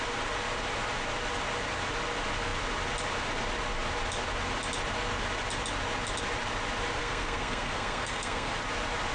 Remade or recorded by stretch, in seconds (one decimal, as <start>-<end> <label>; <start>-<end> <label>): 0.0-7.0 recorded; 7.0-8.5 remade; 8.5-9.1 recorded